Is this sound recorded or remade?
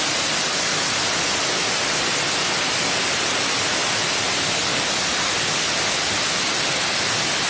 recorded